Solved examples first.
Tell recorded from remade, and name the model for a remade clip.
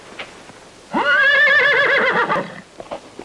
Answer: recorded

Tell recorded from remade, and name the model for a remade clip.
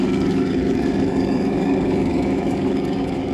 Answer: remade, codec, DAC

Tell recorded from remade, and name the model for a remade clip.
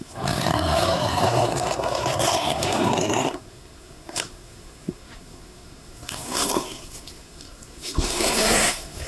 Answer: remade, codec, SNAC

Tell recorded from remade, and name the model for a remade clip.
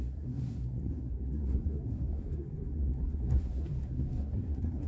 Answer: remade, codec, SNAC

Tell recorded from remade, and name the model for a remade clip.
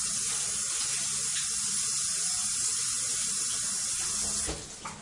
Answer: recorded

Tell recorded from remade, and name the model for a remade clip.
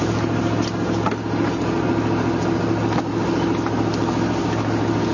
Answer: recorded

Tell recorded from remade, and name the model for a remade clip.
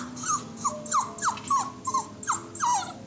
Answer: recorded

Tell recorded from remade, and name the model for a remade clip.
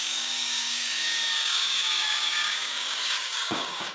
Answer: remade, codec, DAC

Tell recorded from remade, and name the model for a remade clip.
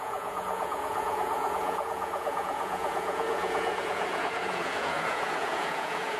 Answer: remade, vocoder, Vocos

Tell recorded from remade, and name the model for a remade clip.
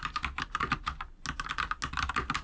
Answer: recorded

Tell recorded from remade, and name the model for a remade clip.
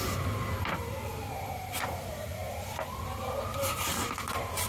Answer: remade, vocoder, BigVGAN v2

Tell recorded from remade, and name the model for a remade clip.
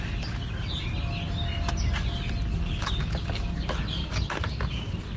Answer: recorded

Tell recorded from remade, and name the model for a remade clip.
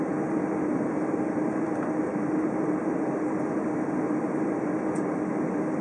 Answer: remade, vocoder, BigVGAN v2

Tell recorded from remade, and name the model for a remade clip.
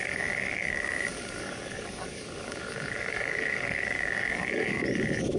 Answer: remade, codec, DAC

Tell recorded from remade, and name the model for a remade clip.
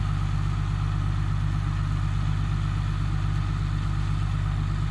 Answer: recorded